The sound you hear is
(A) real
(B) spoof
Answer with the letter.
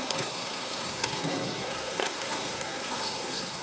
B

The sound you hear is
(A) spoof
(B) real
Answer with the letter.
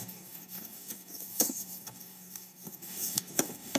A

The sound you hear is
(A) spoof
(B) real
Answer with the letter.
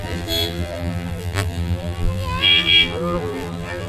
A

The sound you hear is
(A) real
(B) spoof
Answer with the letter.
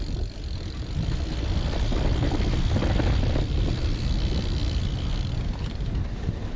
A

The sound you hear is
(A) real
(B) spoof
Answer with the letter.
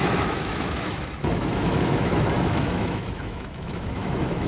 B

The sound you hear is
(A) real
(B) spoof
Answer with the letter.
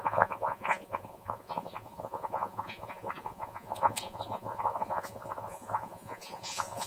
B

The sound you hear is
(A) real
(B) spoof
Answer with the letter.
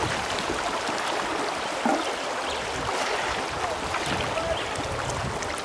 A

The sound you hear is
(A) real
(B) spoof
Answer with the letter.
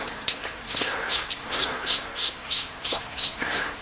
B